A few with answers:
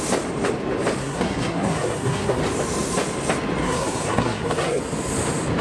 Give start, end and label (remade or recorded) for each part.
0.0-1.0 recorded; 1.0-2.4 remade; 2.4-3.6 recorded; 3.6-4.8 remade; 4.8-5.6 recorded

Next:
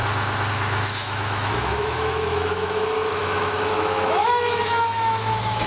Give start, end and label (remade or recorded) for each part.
0.0-0.5 recorded; 0.5-5.7 remade